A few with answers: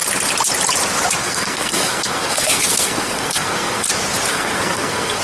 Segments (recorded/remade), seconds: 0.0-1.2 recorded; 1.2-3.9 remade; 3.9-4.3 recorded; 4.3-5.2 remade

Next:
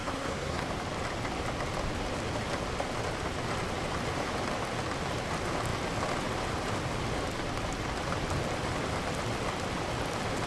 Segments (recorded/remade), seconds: 0.0-0.7 remade; 0.7-10.5 recorded